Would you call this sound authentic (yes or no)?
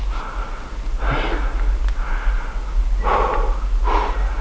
yes